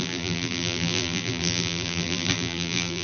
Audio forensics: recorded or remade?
remade